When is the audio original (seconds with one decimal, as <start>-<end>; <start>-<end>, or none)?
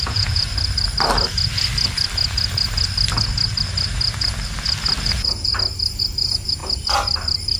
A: 0.5-5.1; 5.5-6.0; 6.6-7.6